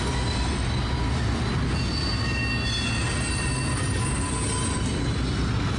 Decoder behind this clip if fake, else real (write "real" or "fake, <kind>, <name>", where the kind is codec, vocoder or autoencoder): real